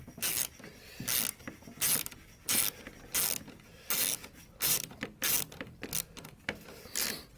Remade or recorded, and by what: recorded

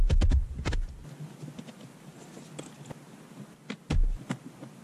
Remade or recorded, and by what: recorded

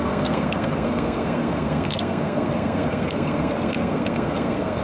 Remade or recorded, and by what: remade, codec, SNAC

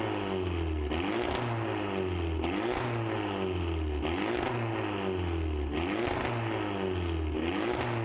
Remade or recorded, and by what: recorded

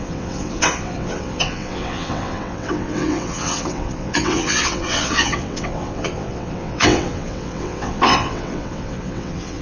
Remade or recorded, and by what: remade, vocoder, WaveNeXt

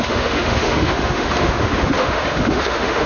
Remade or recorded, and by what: remade, autoencoder, DAC-VAE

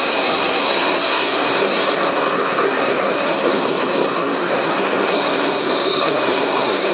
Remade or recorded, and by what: remade, codec, SNAC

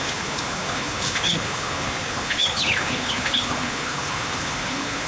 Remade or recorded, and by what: remade, codec, HILCodec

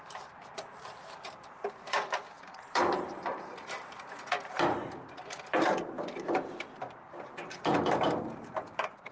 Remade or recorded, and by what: remade, vocoder, BigVGAN v2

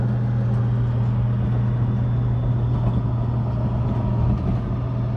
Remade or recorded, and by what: recorded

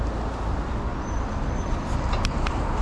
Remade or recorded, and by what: recorded